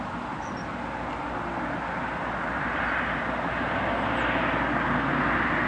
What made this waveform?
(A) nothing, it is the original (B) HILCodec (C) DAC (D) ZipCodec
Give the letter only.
A